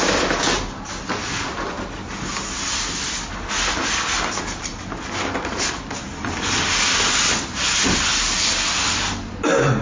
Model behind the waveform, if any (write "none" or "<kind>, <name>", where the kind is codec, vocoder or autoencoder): none